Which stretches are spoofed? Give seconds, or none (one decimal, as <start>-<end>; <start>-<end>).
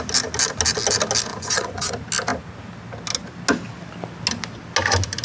1.3-1.9